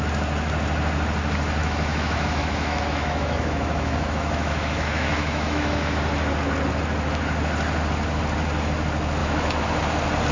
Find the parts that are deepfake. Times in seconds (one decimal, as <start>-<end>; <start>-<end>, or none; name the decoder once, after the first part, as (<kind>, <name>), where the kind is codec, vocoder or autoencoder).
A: 1.6-6.0 (autoencoder, DAC-VAE); 9.2-9.8